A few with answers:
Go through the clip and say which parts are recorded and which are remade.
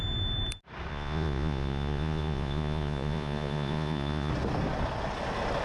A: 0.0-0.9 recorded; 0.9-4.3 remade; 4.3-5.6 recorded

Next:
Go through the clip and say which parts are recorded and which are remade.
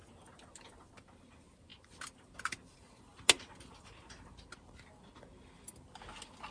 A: 0.0-6.5 recorded